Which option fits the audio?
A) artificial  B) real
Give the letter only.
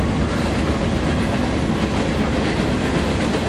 B